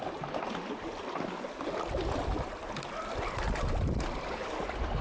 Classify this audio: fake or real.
real